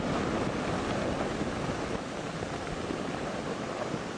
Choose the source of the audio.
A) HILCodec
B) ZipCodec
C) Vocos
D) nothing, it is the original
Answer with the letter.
D